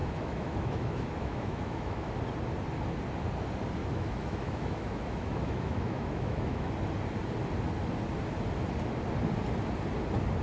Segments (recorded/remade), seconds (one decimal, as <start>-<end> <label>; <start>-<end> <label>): 0.0-2.1 remade; 2.1-3.8 recorded; 3.8-6.7 remade; 6.7-10.4 recorded